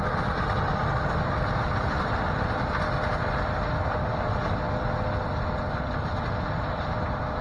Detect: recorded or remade recorded